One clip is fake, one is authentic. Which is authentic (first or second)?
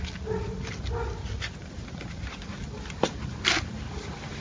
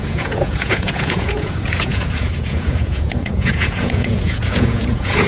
first